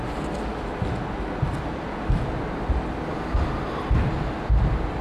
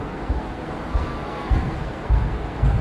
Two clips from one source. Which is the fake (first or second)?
second